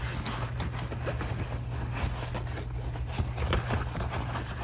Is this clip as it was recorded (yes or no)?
yes